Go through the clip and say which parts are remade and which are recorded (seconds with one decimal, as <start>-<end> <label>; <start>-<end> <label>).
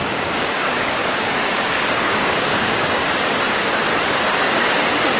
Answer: 0.0-3.1 remade; 3.1-3.9 recorded; 3.9-4.6 remade; 4.6-5.2 recorded